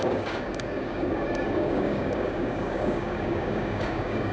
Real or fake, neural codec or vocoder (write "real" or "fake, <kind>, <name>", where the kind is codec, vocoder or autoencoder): fake, codec, DAC